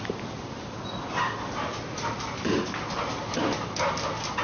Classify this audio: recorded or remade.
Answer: recorded